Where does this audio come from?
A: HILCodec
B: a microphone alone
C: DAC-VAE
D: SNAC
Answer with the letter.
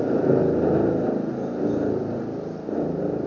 B